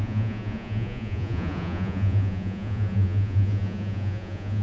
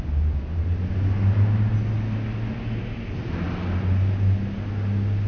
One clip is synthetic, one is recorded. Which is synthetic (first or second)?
first